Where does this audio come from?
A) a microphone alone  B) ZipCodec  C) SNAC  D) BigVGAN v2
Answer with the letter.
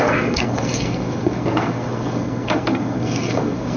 C